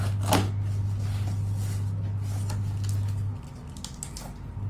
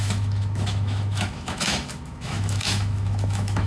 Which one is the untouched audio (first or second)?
first